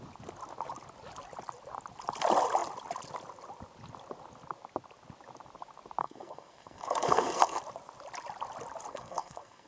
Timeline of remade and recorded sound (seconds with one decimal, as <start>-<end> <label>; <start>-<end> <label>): 0.0-6.0 recorded; 6.0-7.6 remade; 7.6-8.9 recorded; 8.9-9.7 remade